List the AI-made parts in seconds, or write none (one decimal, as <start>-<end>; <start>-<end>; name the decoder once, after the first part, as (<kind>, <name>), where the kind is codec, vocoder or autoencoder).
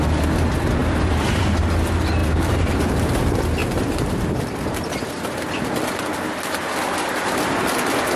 0.8-1.4 (vocoder, BigVGAN v2); 2.2-2.8; 3.6-5.1